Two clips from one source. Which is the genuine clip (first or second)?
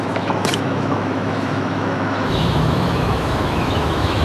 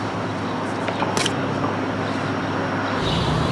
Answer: second